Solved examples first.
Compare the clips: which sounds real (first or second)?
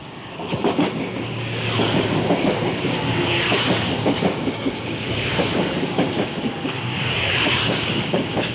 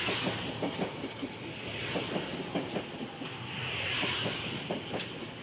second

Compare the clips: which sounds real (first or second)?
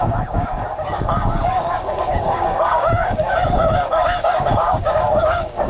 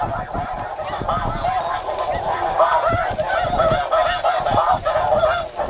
second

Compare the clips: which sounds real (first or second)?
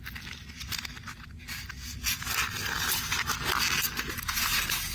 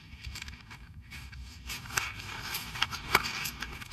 first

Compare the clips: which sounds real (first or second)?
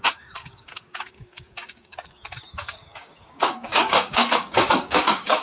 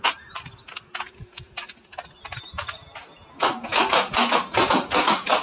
second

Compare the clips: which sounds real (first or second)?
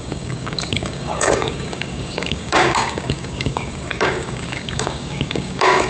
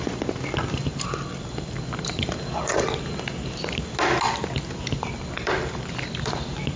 second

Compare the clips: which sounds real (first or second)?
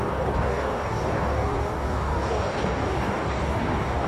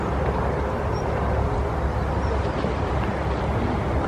second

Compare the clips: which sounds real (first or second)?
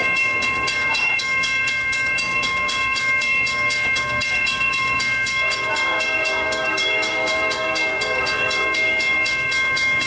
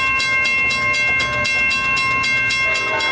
second